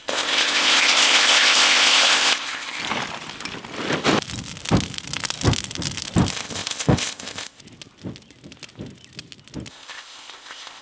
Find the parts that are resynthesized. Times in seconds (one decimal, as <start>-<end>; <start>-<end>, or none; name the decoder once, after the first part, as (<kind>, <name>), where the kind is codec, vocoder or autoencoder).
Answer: 0.0-2.8 (codec, ZipCodec); 6.3-7.6; 9.7-10.8